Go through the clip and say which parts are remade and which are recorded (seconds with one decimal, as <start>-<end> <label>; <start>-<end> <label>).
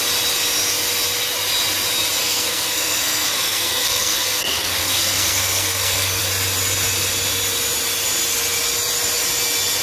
0.0-2.2 recorded; 2.2-6.2 remade; 6.2-9.8 recorded